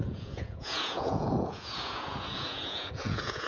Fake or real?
fake